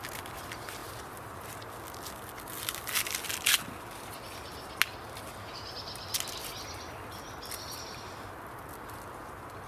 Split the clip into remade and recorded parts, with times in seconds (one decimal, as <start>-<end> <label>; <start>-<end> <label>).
0.0-9.7 recorded